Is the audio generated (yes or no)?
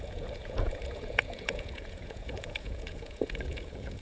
yes